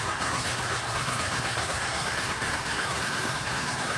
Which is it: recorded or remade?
remade